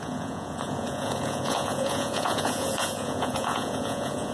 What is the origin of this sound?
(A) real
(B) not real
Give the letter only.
B